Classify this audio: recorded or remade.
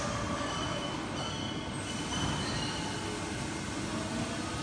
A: recorded